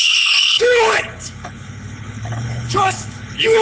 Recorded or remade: remade